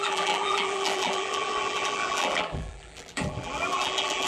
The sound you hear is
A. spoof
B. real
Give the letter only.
A